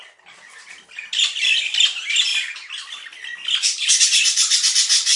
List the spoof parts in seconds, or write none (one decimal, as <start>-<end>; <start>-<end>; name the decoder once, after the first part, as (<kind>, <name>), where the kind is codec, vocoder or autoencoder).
0.0-2.3 (vocoder, BigVGAN v2); 4.0-5.2